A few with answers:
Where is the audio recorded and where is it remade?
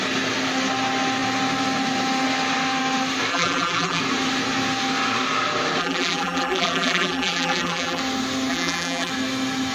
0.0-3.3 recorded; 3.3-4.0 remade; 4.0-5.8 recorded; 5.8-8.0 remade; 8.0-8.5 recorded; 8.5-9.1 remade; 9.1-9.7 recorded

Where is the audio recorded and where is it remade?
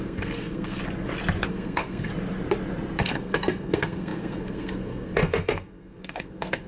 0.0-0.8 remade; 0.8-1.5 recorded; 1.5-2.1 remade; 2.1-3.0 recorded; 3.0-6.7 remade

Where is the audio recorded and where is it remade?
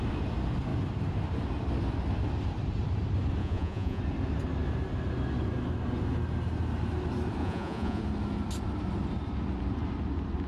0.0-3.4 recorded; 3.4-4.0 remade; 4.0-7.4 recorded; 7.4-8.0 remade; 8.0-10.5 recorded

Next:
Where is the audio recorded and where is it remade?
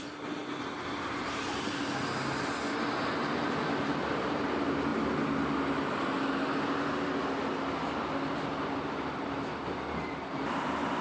0.0-11.0 recorded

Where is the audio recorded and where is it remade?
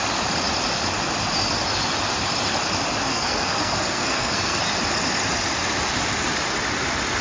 0.0-3.1 recorded; 3.1-4.6 remade; 4.6-7.2 recorded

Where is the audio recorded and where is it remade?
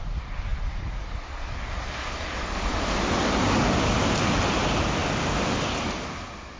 0.0-6.6 recorded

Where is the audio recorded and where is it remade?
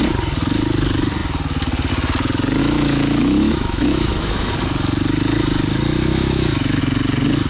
0.0-2.6 recorded; 2.6-4.5 remade; 4.5-6.1 recorded; 6.1-6.8 remade; 6.8-7.5 recorded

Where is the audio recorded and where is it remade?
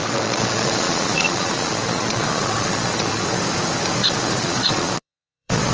0.0-3.4 remade; 3.4-4.0 recorded; 4.0-5.7 remade